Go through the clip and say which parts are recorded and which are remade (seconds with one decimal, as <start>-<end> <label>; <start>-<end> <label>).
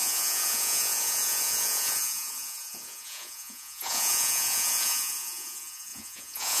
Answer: 0.0-6.6 remade